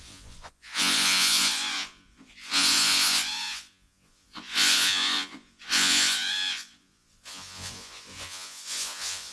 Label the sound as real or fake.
fake